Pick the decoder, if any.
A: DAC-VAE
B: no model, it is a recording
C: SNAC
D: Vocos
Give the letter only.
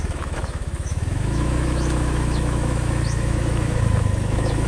A